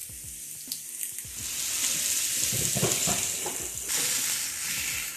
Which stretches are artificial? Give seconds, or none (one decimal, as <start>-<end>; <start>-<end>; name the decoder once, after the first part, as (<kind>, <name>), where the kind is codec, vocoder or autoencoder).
none